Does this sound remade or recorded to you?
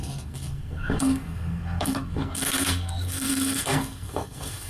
remade